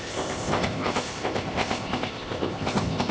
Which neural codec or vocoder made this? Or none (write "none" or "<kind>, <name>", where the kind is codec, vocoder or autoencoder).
codec, ZipCodec